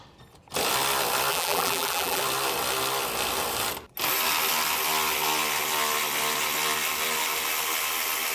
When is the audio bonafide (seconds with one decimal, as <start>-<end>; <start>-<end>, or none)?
0.0-1.3; 2.2-8.3